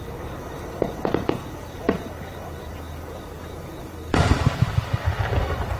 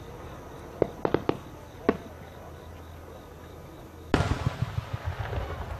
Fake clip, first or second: first